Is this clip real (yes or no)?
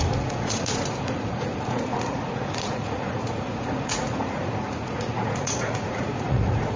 no